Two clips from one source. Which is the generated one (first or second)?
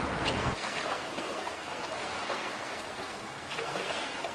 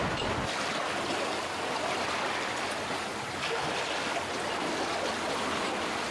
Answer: first